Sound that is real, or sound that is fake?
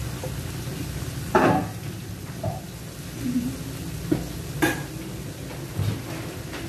real